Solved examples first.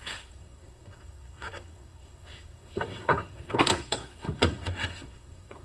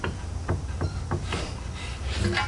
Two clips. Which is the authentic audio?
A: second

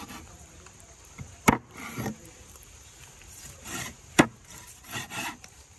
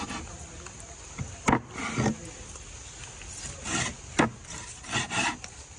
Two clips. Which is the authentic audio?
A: second